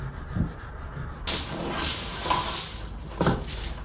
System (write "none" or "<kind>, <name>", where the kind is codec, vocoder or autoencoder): none